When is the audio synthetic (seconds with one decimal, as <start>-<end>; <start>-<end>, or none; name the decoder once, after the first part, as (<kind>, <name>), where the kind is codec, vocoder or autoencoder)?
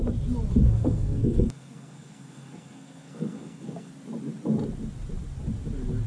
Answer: 0.5-3.9 (codec, SNAC)